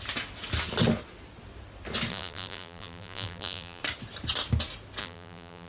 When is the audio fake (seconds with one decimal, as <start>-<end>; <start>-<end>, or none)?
2.1-3.8; 5.0-5.7